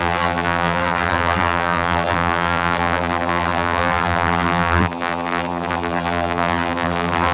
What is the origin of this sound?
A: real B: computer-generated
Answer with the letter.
B